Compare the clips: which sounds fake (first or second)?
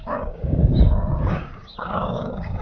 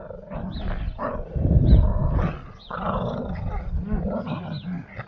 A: first